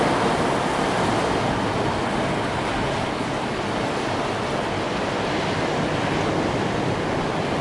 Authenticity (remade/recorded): recorded